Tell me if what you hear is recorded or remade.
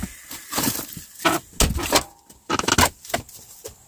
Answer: recorded